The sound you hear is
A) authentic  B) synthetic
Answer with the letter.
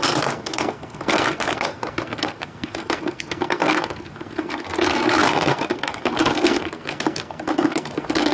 B